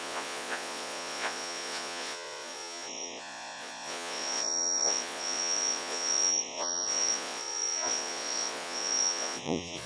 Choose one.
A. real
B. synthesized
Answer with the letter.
B